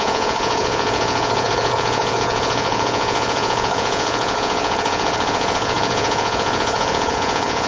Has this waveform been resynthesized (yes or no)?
yes